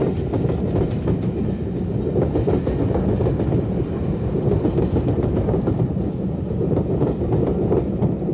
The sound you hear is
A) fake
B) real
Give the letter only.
B